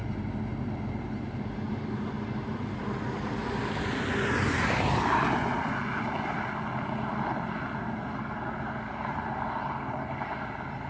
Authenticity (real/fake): real